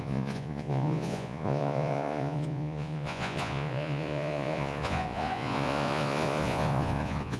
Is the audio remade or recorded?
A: remade